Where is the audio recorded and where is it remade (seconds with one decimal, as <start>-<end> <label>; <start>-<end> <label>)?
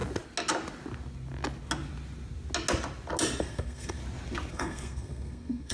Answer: 0.0-3.4 recorded; 3.4-4.0 remade; 4.0-4.5 recorded; 4.5-5.7 remade